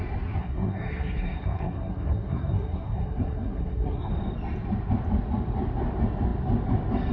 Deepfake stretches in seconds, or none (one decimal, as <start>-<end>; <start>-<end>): 0.4-4.1